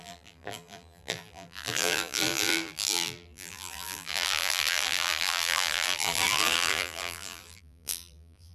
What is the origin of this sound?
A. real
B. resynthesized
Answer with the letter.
B